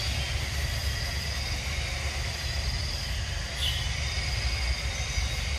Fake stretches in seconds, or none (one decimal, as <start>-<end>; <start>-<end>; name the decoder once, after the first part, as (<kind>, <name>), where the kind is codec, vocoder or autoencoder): none